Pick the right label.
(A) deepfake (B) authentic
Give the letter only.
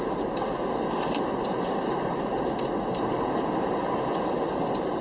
A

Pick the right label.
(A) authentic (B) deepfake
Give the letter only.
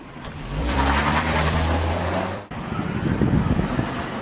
B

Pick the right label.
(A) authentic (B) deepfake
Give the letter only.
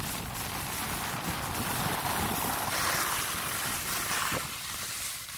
A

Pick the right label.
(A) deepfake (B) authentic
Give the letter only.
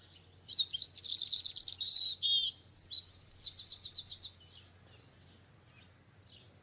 B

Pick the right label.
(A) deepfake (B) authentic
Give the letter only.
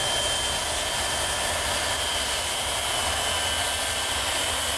B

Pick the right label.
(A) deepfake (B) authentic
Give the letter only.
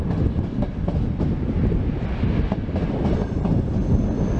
B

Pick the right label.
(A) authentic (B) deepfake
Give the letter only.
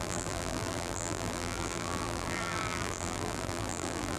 B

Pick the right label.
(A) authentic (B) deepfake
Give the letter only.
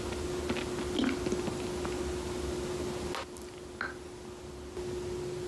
A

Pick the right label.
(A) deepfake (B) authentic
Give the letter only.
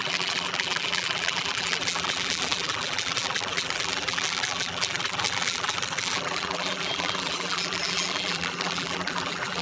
A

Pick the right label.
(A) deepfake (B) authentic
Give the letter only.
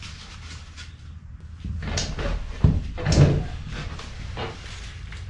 B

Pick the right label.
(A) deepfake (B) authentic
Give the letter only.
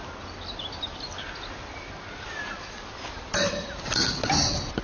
B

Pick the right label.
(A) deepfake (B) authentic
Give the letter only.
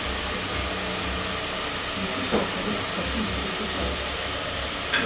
B